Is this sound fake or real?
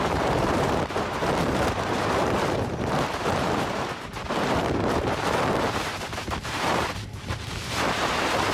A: fake